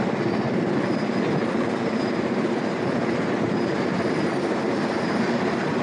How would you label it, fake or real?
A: fake